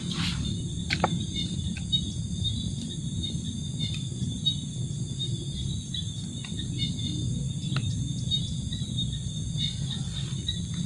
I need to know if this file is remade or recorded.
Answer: recorded